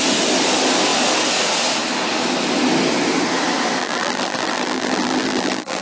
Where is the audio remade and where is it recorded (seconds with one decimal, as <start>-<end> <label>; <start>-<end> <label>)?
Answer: 0.0-3.8 recorded; 3.8-5.8 remade